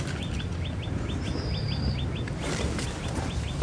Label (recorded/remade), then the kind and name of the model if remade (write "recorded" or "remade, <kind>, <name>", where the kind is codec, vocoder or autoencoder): recorded